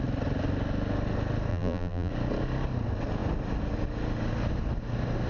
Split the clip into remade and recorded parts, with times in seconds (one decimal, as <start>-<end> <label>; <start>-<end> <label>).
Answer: 0.0-1.5 recorded; 1.5-2.1 remade; 2.1-5.3 recorded